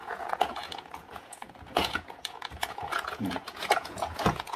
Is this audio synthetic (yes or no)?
yes